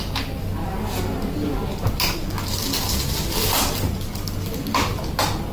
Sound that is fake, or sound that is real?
real